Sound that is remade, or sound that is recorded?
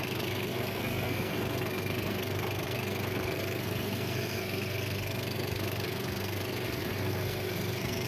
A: remade